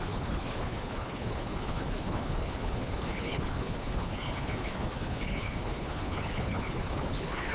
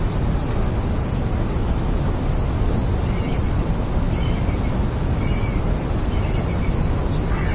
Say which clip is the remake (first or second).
first